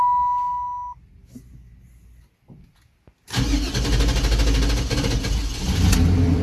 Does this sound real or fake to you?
real